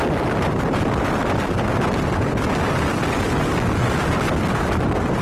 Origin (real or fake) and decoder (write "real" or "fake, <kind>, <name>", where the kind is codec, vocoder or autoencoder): real